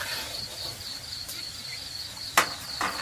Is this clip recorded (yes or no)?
yes